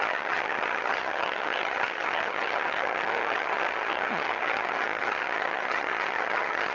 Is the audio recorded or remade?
remade